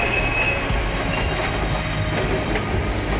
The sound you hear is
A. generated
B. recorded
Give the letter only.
B